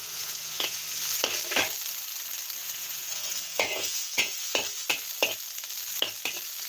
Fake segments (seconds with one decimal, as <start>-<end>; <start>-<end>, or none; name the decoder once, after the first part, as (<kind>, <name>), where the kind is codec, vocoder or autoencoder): 0.0-0.8 (vocoder, Vocos); 2.6-4.6